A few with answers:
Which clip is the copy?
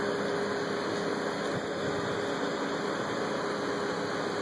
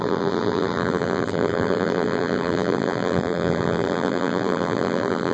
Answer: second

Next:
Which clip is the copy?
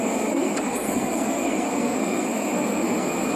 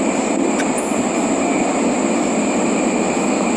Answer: first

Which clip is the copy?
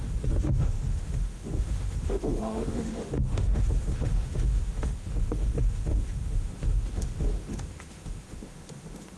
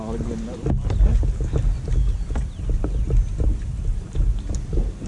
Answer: first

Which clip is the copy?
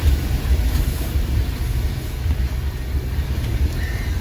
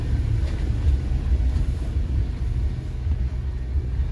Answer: first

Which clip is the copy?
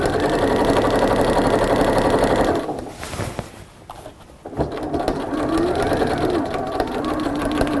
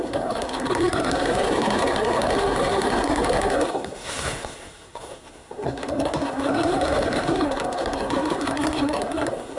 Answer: second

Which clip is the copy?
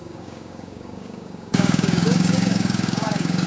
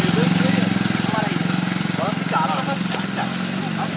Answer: first